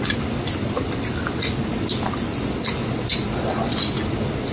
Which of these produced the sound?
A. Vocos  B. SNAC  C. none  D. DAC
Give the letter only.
C